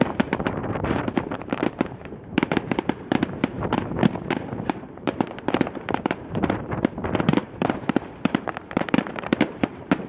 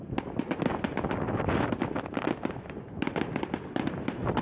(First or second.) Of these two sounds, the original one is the second